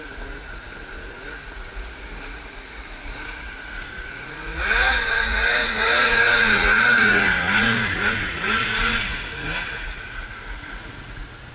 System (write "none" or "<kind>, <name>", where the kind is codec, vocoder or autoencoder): vocoder, Vocos